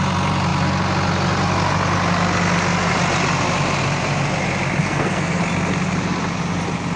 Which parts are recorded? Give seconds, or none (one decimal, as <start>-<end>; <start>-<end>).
0.0-4.8; 5.4-7.0